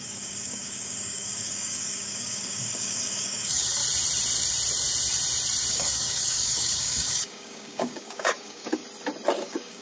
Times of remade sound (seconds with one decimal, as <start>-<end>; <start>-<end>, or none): 0.0-3.8; 5.7-8.8; 9.4-9.8